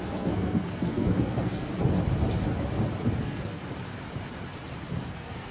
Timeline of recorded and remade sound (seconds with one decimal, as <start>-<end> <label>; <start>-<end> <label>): 0.0-1.7 remade; 1.7-3.2 recorded; 3.2-3.6 remade; 3.6-5.1 recorded; 5.1-5.5 remade